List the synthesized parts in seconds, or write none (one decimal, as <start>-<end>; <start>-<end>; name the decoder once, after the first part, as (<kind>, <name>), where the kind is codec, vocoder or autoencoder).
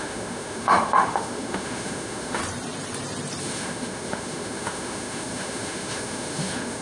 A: 0.0-2.4 (autoencoder, DAC-VAE); 3.4-6.8